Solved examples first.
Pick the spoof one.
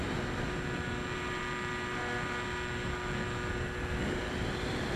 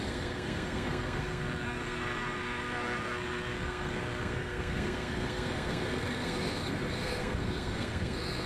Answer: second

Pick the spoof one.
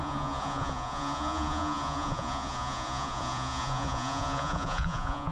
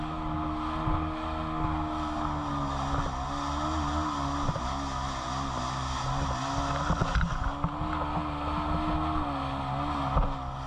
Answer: first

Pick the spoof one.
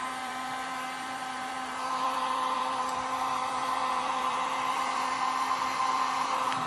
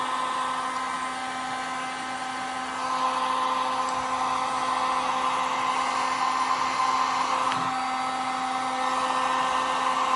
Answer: first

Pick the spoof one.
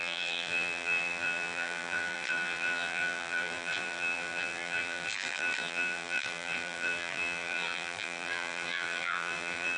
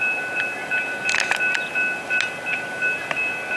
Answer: first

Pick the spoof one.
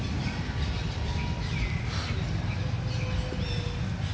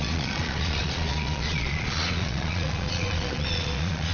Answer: second